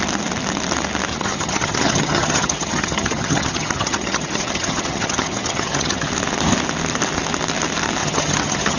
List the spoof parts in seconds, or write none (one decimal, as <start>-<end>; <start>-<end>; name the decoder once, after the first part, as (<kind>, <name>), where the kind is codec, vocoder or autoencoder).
1.1-6.1 (vocoder, HiFi-GAN); 8.0-8.8